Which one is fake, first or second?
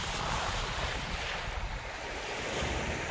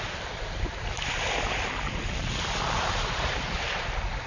first